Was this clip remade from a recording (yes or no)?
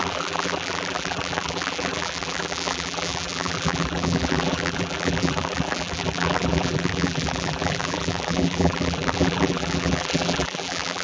yes